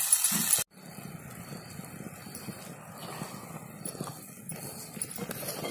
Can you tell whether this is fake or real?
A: real